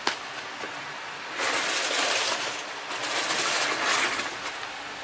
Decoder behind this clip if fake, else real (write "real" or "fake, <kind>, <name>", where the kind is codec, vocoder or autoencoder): real